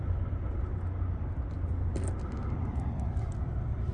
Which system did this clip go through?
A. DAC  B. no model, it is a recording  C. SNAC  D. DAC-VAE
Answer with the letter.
B